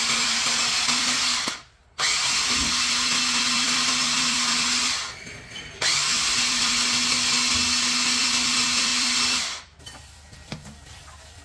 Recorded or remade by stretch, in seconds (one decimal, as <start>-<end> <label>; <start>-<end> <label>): 0.0-2.2 remade; 2.2-2.7 recorded; 2.7-6.8 remade; 6.8-8.2 recorded; 8.2-11.4 remade